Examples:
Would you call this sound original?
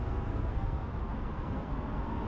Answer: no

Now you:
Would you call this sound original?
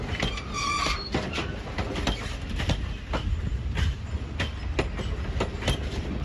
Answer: yes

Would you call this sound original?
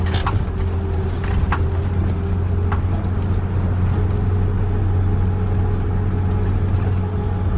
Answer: yes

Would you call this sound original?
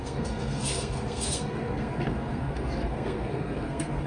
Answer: no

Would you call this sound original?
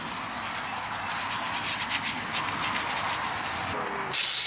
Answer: yes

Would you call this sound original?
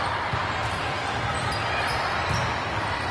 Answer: yes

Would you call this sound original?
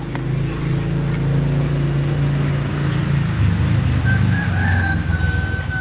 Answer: yes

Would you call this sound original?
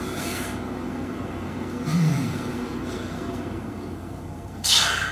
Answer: no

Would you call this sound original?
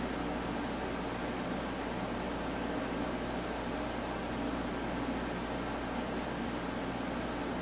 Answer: yes